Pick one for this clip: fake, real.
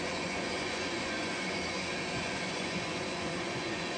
fake